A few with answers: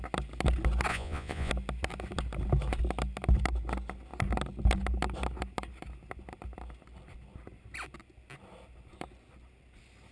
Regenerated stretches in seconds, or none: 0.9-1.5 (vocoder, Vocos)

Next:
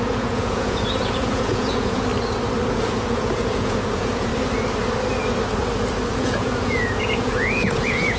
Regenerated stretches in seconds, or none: 0.0-2.1 (vocoder, Vocos); 2.7-4.3; 6.1-8.2

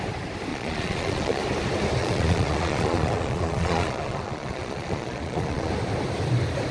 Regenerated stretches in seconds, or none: 0.5-1.4 (vocoder, Vocos); 2.0-5.7

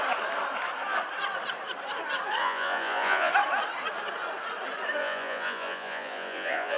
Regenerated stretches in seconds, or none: 2.4-3.3 (vocoder, Vocos); 5.0-6.8

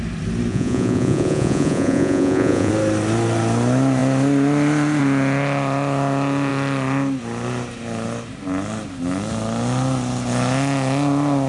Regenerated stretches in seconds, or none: 0.5-2.7 (vocoder, Vocos)

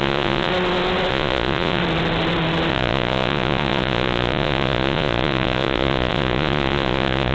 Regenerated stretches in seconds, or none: 0.0-0.5 (vocoder, Vocos); 1.1-1.8; 2.7-7.3

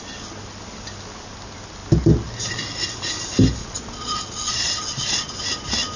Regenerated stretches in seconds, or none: 3.6-5.3 (vocoder, Vocos)

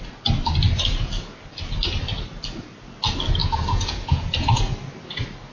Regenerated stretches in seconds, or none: 3.4-4.7 (vocoder, Vocos)